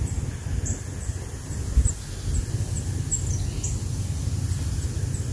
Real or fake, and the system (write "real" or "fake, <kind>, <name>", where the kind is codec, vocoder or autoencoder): real